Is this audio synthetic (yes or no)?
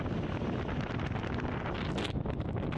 no